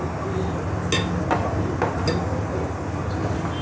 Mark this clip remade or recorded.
recorded